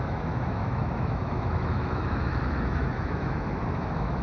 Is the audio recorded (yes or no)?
no